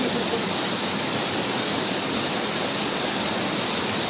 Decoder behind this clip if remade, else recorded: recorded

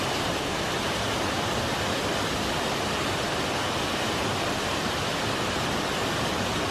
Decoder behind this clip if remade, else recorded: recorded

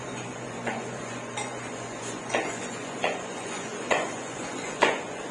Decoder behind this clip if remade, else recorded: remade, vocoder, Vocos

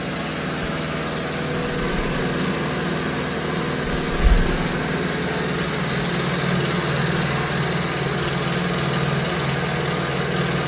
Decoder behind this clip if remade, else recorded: recorded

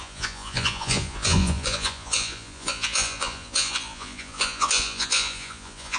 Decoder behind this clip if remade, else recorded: remade, vocoder, Vocos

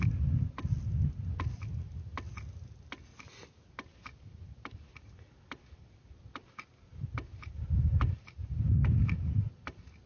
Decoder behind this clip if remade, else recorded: recorded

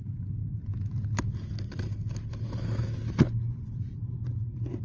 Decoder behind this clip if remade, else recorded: recorded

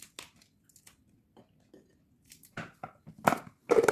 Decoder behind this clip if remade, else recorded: recorded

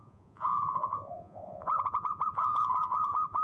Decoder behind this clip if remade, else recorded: remade, vocoder, Vocos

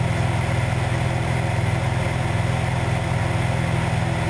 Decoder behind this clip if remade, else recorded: recorded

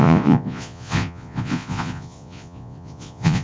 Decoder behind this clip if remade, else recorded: remade, vocoder, Vocos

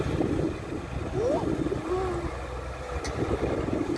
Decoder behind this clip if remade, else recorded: recorded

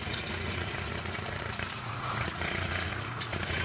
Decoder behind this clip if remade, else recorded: remade, vocoder, Vocos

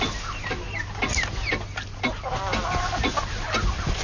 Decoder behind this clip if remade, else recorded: recorded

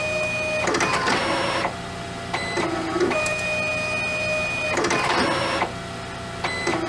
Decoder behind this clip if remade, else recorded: recorded